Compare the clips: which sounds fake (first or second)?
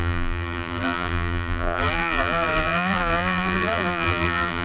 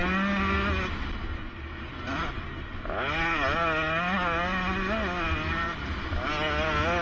first